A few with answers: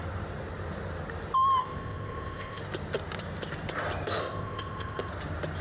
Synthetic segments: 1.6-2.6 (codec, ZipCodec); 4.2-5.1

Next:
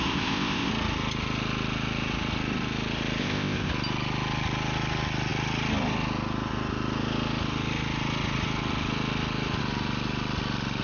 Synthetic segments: 0.0-0.7 (codec, ZipCodec); 3.2-3.7

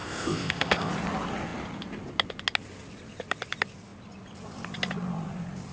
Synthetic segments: 0.0-0.9 (codec, ZipCodec)